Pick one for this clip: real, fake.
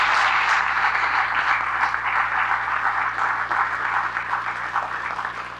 real